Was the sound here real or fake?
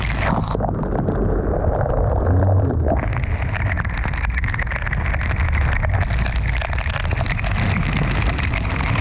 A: real